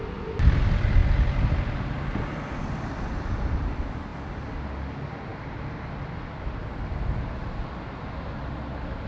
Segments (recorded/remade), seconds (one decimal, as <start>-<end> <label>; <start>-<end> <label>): 0.0-9.1 recorded